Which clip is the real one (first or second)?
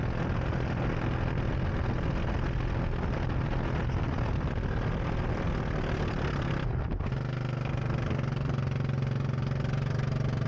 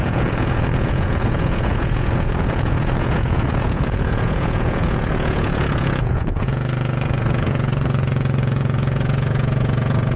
first